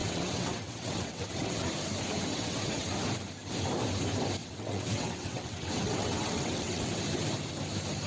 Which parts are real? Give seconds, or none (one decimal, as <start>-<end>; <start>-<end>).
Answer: 1.6-2.3; 2.9-4.4; 7.0-8.1